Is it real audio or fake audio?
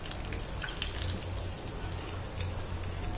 real